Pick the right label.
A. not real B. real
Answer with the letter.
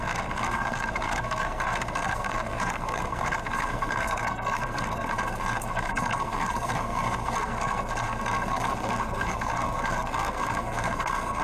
A